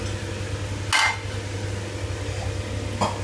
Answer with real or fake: real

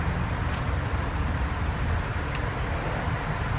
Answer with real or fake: real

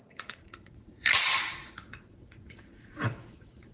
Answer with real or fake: fake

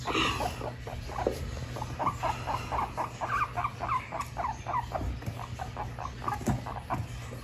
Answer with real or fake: real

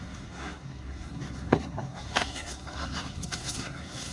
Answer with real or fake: fake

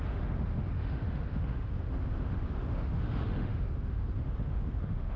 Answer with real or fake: fake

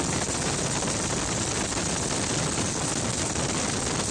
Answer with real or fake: real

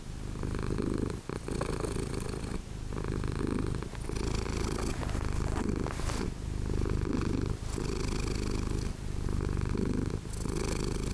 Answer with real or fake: real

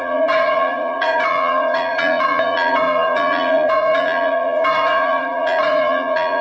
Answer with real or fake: fake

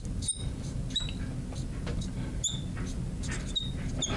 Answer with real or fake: real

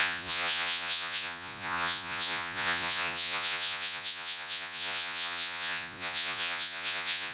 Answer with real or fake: fake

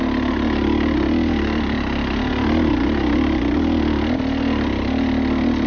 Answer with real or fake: real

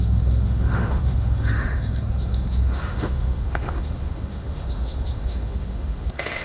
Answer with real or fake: fake